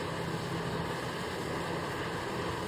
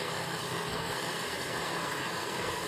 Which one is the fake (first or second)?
second